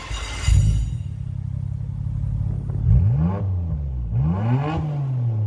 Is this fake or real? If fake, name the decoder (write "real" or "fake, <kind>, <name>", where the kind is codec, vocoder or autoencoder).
real